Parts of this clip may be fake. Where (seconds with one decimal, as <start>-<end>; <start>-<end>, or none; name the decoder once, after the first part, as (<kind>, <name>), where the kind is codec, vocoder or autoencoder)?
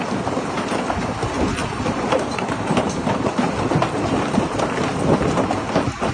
1.6-3.5 (vocoder, BigVGAN v2)